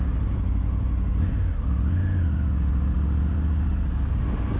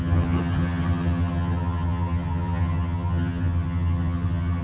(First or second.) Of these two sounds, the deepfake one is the second